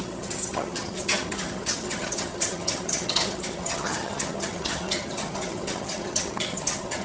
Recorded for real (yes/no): no